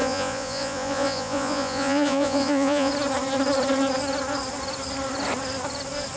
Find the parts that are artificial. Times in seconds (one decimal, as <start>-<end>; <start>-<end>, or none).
0.0-2.9